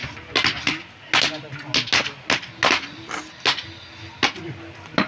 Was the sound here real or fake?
real